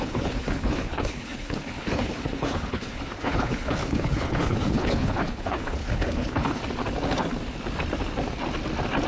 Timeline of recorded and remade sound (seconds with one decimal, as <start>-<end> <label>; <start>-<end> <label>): 0.0-6.6 remade; 6.6-9.1 recorded